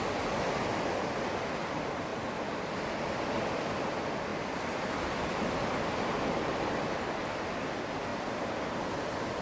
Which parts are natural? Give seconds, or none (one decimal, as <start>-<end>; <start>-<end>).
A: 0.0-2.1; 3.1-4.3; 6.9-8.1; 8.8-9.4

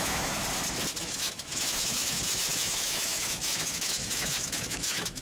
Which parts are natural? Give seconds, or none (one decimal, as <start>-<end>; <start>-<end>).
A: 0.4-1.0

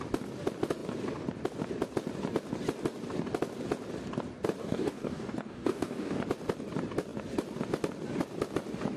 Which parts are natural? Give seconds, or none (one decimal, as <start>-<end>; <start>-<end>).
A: 0.0-4.6; 6.2-9.0

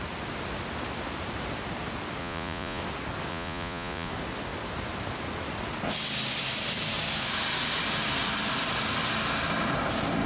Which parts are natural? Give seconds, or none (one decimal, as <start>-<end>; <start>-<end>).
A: 0.0-2.2; 2.8-3.3; 4.1-10.3

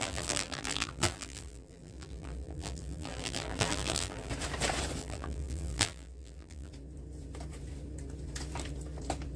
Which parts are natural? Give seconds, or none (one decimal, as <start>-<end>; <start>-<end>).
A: 4.3-5.0; 6.7-9.4

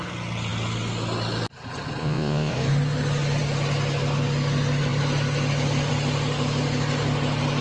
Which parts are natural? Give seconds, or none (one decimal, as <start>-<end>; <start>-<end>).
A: 0.0-2.0; 2.5-7.6

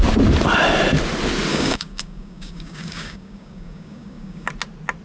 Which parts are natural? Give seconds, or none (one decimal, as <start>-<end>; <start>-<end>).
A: 0.0-1.5; 4.5-5.0

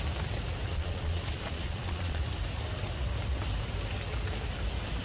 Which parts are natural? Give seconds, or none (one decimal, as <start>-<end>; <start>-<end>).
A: 0.0-0.7; 2.2-5.0